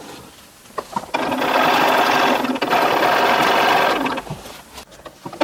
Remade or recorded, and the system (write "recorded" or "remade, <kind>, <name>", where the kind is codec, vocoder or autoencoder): recorded